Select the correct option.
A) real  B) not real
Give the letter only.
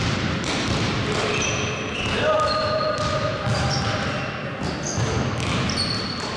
A